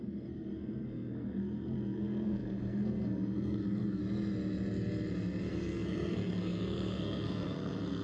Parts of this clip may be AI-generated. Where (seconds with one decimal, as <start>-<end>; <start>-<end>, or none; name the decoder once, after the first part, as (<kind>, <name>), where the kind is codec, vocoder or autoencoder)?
0.0-4.0 (codec, SNAC); 5.5-8.0